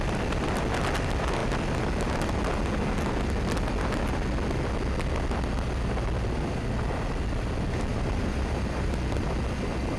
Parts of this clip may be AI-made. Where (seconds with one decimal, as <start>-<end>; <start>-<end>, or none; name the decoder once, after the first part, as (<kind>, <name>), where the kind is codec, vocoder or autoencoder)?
7.9-8.9 (vocoder, BigVGAN v2)